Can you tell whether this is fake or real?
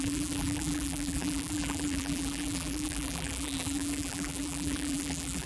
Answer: fake